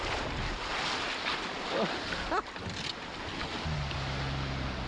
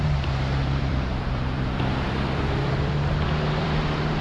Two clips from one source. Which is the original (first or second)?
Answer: first